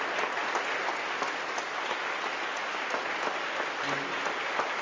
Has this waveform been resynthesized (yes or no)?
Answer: no